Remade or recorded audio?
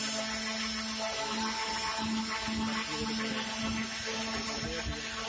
recorded